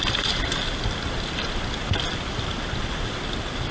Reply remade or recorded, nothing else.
recorded